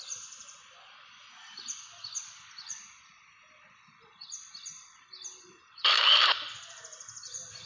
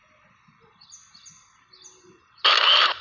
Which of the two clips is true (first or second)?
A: second